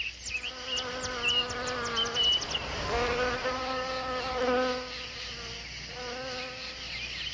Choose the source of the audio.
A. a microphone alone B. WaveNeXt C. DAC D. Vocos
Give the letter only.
A